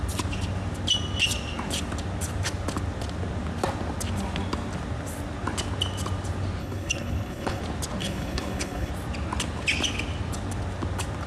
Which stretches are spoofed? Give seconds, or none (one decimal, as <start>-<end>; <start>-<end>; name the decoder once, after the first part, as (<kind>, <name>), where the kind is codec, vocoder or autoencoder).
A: 6.6-7.6 (codec, HILCodec); 8.0-8.9